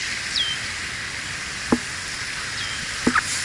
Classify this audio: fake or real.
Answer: fake